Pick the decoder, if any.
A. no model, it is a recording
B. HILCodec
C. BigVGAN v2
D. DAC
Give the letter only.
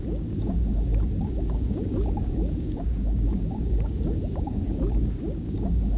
D